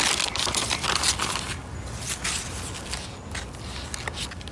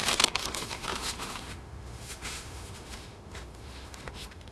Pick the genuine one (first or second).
first